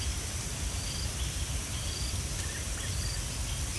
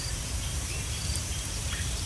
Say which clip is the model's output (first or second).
second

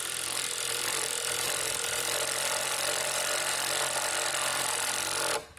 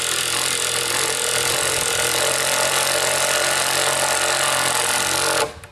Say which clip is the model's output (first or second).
first